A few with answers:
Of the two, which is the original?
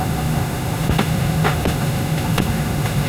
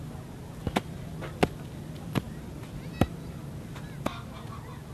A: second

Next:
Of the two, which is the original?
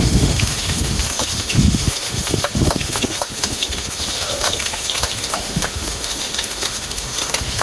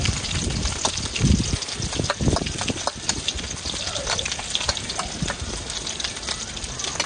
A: second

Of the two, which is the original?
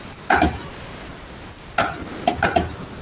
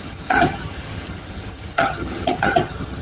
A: first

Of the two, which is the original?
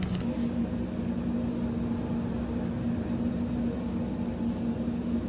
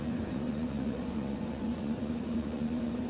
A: first